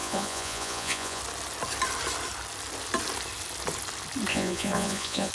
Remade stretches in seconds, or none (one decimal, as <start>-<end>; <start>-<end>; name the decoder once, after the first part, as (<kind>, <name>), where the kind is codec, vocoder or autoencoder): 0.0-1.2 (vocoder, Vocos); 4.3-5.3